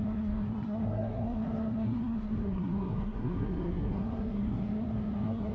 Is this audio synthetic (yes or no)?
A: yes